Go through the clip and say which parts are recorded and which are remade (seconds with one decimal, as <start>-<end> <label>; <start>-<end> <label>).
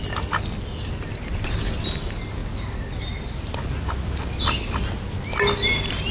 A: 0.0-6.1 recorded